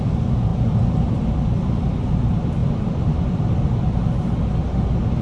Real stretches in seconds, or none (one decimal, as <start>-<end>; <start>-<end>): 0.0-0.5; 2.0-2.6; 3.8-5.2